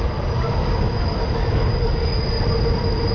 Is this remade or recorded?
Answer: recorded